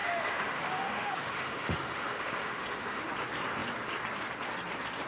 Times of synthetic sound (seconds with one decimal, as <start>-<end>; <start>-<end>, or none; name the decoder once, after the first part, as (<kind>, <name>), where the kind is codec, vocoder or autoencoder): 0.0-3.1 (autoencoder, DAC-VAE)